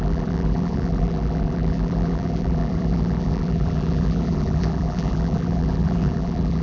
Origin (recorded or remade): remade